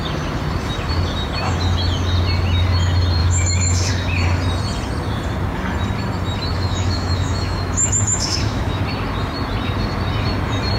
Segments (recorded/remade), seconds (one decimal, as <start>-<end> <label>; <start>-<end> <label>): 0.0-3.2 recorded; 3.2-3.9 remade; 3.9-6.5 recorded; 6.5-8.8 remade; 8.8-10.8 recorded

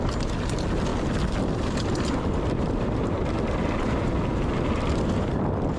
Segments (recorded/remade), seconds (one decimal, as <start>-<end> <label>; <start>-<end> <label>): 0.0-5.8 recorded